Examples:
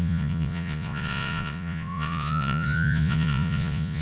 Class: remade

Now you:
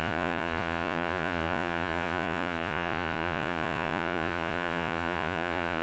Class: remade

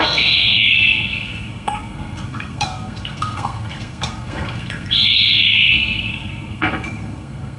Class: remade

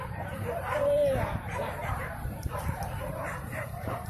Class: remade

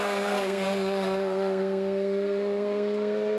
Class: remade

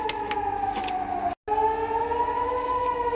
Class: recorded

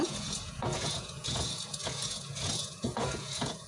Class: remade